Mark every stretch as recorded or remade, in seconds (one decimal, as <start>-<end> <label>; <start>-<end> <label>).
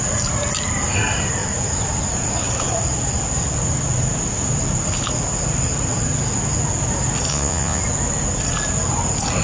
0.0-7.3 recorded; 7.3-7.8 remade; 7.8-9.4 recorded